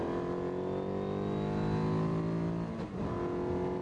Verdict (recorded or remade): recorded